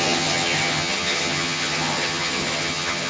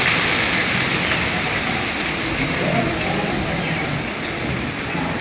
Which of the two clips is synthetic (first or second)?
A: first